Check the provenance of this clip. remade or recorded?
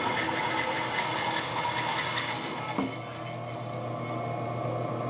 recorded